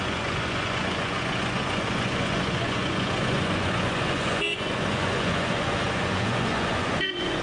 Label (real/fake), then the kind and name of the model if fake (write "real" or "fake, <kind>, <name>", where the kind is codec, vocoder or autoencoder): fake, vocoder, Vocos